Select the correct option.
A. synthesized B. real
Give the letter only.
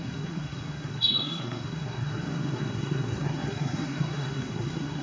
A